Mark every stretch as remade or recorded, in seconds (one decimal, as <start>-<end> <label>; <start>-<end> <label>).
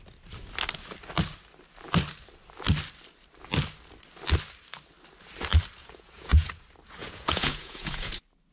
0.0-5.8 recorded; 5.8-6.5 remade; 6.5-7.0 recorded; 7.0-8.1 remade; 8.1-8.5 recorded